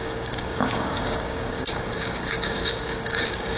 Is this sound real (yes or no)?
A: no